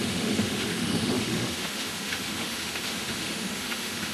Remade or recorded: remade